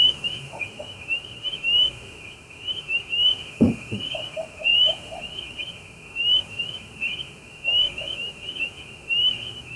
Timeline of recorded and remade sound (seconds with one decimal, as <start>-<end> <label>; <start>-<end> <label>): 0.0-9.8 remade